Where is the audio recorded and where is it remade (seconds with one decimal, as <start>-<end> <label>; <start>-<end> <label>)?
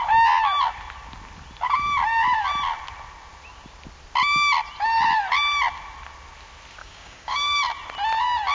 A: 0.0-6.8 recorded; 6.8-7.6 remade; 7.6-8.5 recorded